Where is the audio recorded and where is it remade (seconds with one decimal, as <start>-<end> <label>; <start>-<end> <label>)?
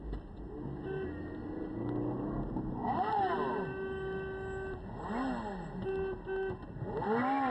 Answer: 0.0-7.5 recorded